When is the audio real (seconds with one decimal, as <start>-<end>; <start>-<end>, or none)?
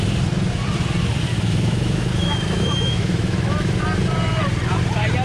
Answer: 0.0-1.3; 3.8-5.2